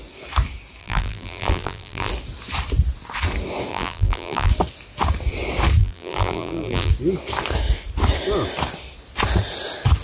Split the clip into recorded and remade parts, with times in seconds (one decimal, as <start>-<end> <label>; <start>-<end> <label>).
0.0-0.8 recorded; 0.8-2.1 remade; 2.1-3.7 recorded; 3.7-4.5 remade; 4.5-5.8 recorded; 5.8-6.9 remade; 6.9-10.0 recorded